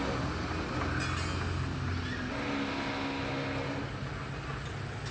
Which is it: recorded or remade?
recorded